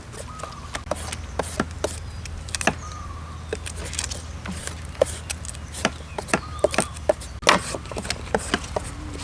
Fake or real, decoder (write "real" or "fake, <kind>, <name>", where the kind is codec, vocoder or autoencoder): real